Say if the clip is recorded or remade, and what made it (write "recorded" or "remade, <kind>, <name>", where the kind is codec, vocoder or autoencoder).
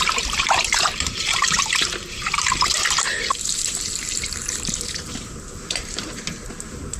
remade, vocoder, BigVGAN v2